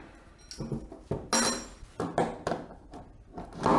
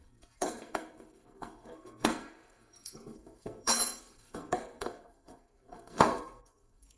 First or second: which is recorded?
first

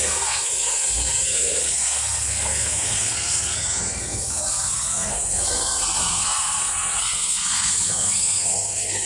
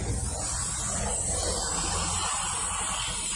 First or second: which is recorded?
second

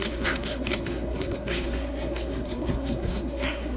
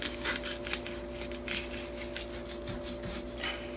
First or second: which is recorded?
second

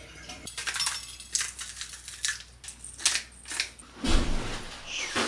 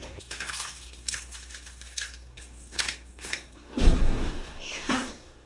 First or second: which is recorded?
first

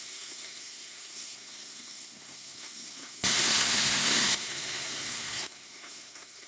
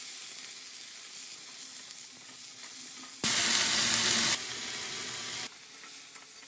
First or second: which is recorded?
second